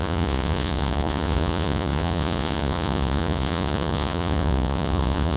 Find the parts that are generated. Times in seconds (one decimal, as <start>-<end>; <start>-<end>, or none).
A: 0.0-5.4